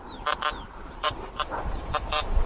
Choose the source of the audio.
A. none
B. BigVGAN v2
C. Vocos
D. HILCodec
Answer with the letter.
B